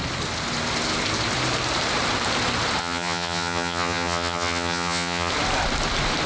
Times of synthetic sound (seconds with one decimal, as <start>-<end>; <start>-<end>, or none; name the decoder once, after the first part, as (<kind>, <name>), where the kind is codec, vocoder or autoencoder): 2.8-5.3 (vocoder, HiFi-GAN)